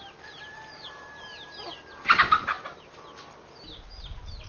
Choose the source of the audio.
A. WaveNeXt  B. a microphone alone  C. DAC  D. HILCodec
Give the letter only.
B